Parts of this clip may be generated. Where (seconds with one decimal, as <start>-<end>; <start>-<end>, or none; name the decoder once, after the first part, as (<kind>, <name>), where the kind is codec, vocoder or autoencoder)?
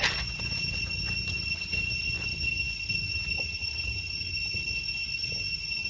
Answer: none